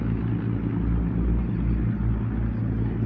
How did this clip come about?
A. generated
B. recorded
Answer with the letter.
B